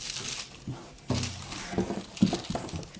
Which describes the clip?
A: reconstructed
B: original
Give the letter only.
B